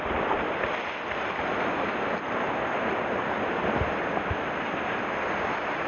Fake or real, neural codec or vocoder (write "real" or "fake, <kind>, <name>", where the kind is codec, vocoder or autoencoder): real